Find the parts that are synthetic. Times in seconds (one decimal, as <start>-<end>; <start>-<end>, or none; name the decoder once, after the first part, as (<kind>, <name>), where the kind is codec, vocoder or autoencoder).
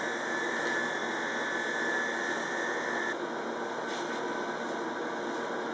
none